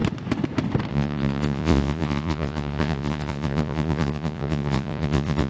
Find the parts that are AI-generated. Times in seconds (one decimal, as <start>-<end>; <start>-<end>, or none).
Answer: 0.9-5.5